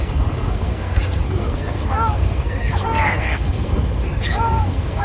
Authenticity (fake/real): fake